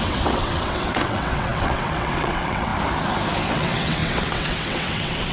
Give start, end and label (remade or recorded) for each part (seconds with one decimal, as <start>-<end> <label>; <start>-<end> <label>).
0.0-2.7 remade; 2.7-3.5 recorded; 3.5-5.3 remade